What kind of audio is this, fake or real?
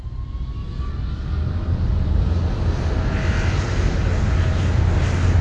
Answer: real